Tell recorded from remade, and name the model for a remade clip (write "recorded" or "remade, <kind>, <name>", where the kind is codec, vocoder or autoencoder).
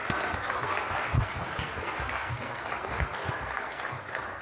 remade, codec, SNAC